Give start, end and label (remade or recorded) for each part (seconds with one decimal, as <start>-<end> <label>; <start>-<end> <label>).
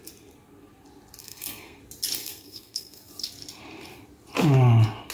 0.0-1.2 recorded; 1.2-1.8 remade; 1.8-2.2 recorded; 2.2-3.1 remade; 3.1-5.1 recorded